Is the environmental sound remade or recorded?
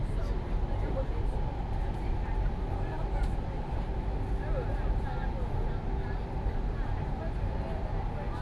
recorded